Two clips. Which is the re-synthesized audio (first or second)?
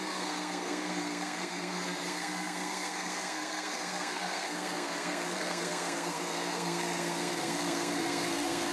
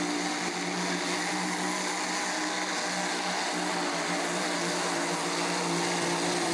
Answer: first